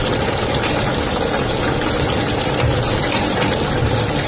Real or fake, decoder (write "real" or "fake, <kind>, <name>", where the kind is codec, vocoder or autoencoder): real